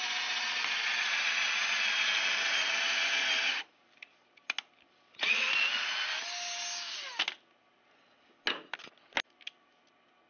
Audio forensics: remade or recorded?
recorded